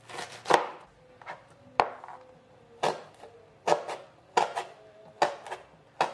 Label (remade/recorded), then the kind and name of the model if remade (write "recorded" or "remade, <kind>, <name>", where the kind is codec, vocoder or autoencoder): recorded